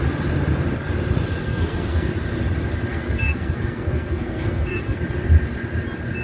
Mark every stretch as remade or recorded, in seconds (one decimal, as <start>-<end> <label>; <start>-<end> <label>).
0.0-1.4 recorded; 1.4-2.1 remade; 2.1-2.9 recorded; 2.9-5.0 remade; 5.0-6.2 recorded

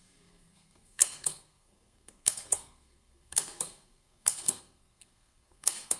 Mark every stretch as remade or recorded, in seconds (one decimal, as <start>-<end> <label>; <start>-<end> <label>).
0.0-6.0 remade

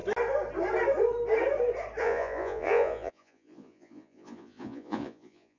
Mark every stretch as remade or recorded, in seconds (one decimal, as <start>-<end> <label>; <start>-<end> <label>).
0.0-2.0 recorded; 2.0-5.6 remade

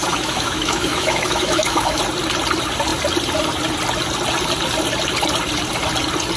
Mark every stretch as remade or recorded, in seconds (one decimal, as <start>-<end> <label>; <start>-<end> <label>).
0.0-2.0 remade; 2.0-6.4 recorded

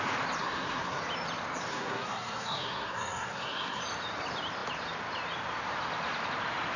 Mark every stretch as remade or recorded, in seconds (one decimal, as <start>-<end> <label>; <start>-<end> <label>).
0.0-0.4 recorded; 0.4-1.0 remade; 1.0-1.7 recorded; 1.7-3.8 remade; 3.8-6.8 recorded

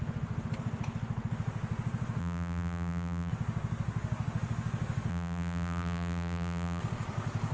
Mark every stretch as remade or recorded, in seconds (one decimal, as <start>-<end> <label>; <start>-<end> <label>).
0.0-2.2 recorded; 2.2-3.3 remade; 3.3-5.1 recorded; 5.1-6.8 remade; 6.8-7.5 recorded

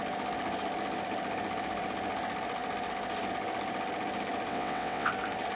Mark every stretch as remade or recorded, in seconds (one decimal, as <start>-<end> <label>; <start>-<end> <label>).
0.0-4.5 recorded; 4.5-5.1 remade; 5.1-5.6 recorded